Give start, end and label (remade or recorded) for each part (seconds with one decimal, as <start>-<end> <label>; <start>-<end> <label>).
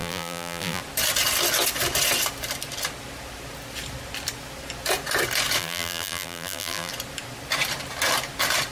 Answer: 0.0-0.8 remade; 0.8-5.6 recorded; 5.6-6.9 remade; 6.9-8.7 recorded